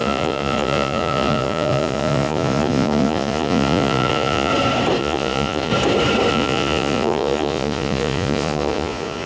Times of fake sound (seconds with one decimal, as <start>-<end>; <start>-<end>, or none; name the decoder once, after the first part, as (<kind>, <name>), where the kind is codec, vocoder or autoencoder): 0.0-4.5 (vocoder, Vocos); 5.0-5.7; 6.3-9.3